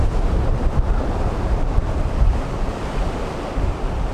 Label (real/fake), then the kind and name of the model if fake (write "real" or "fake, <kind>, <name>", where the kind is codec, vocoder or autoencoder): fake, vocoder, BigVGAN v2